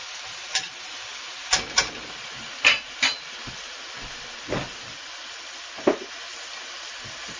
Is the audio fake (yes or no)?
no